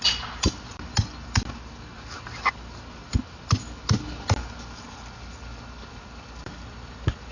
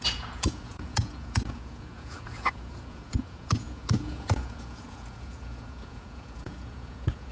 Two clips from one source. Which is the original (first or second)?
first